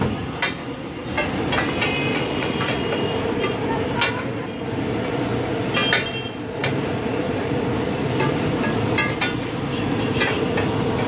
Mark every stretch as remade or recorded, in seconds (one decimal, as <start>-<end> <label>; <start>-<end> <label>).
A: 0.0-2.1 recorded; 2.1-2.8 remade; 2.8-11.1 recorded